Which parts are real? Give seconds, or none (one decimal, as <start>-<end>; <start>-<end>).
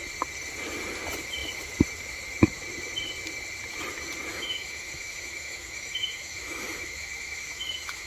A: 0.0-4.3